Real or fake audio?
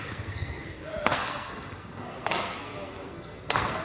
fake